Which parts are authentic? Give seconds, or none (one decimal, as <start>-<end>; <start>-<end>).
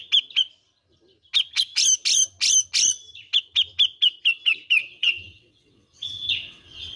0.0-4.8